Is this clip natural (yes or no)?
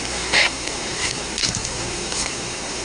no